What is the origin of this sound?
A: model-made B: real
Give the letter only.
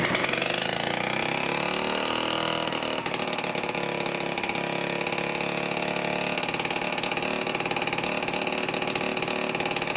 B